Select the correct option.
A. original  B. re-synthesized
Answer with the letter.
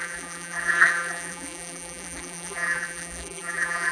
B